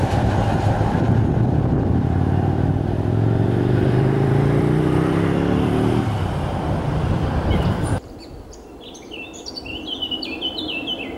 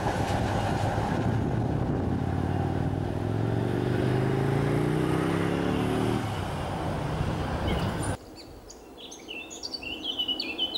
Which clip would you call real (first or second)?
second